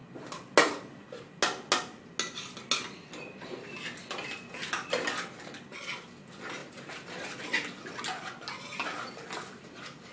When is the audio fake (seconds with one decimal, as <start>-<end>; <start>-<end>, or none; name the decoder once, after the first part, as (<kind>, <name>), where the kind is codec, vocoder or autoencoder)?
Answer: none